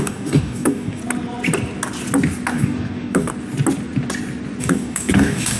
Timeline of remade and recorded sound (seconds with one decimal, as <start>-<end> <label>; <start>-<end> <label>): 0.0-1.0 remade; 1.0-2.5 recorded; 2.5-3.3 remade; 3.3-4.6 recorded; 4.6-5.6 remade